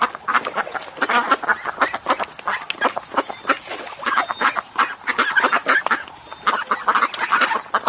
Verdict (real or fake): real